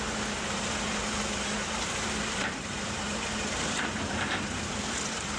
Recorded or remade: remade